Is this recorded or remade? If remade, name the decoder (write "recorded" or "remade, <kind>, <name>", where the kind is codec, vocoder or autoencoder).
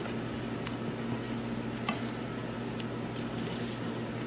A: remade, vocoder, BigVGAN v2